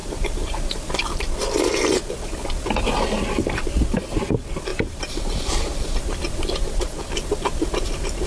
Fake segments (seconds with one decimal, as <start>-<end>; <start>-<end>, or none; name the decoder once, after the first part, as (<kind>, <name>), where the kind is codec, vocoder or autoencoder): 0.0-1.0 (vocoder, BigVGAN v2); 4.7-6.9